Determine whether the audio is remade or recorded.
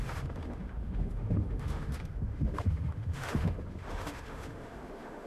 remade